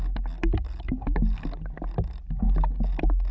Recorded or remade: recorded